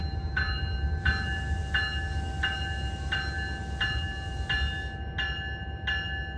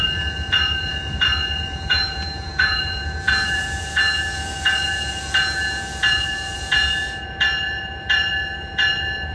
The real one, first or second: first